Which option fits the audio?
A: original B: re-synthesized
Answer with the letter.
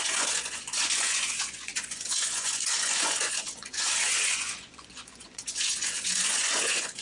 B